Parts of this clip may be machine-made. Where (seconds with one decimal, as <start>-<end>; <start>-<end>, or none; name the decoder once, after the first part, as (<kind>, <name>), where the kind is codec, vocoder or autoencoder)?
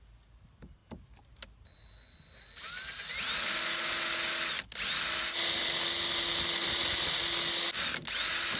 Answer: 6.6-7.2 (vocoder, BigVGAN v2)